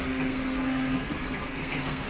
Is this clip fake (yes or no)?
yes